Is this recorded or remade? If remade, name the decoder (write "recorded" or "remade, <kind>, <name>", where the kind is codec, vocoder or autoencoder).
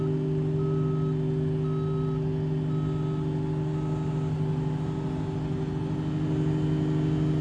recorded